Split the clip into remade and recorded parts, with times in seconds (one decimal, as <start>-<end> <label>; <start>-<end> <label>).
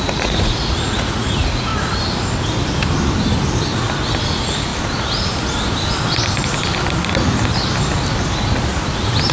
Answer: 0.0-1.7 remade; 1.7-4.2 recorded; 4.2-4.7 remade; 4.7-9.3 recorded